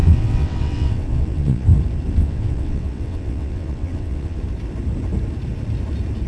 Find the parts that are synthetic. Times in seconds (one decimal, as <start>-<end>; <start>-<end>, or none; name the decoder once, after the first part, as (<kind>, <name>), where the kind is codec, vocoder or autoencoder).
0.0-1.8 (vocoder, WaveNeXt); 2.2-4.4